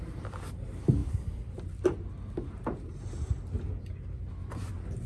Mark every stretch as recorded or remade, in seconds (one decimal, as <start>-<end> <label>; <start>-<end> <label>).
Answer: 0.0-5.1 recorded